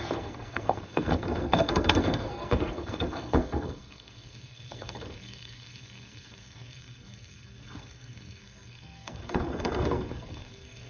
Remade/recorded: remade